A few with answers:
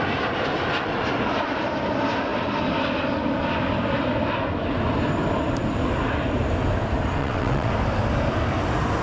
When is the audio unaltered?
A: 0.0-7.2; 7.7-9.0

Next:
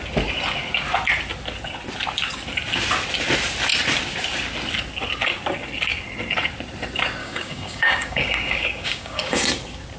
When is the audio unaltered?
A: 0.0-7.2; 9.4-10.0

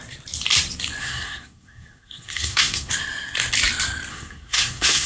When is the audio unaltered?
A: 0.0-1.0; 2.9-4.1

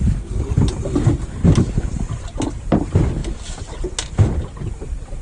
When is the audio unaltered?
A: 0.0-5.2